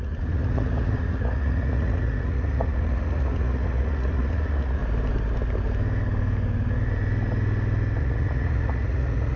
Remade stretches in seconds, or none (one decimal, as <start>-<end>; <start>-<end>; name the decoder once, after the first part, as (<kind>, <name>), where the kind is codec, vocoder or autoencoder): 0.0-4.8 (vocoder, Vocos); 8.0-9.4